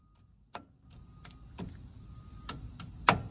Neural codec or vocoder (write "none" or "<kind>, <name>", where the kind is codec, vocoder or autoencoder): none